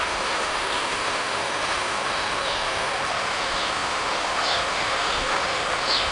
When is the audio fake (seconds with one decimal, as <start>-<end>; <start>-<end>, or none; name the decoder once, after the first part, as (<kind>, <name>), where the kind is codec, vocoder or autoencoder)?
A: 0.0-6.1 (autoencoder, DAC-VAE)